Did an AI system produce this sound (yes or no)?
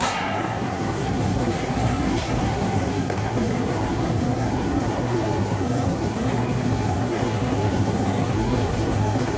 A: yes